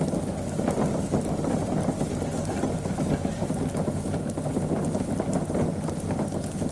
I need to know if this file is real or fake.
real